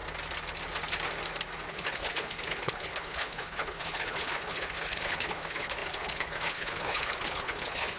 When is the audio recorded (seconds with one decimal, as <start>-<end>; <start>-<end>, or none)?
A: 0.0-1.7